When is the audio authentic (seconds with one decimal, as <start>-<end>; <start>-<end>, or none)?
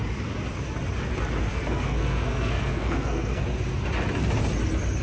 0.0-1.5; 3.4-5.0